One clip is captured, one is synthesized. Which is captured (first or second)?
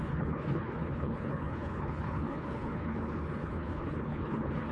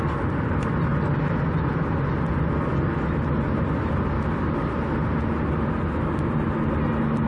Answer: second